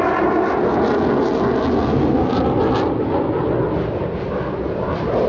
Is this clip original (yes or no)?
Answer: yes